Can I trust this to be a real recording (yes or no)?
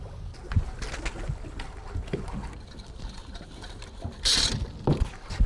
yes